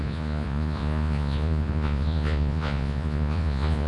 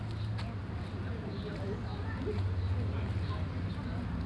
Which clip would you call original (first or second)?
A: second